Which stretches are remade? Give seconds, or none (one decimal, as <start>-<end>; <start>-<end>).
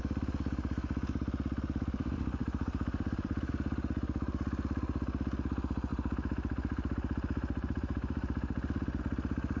2.4-3.5; 5.9-9.0